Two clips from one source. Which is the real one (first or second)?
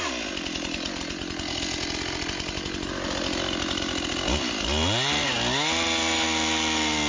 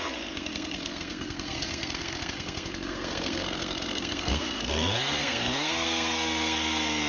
first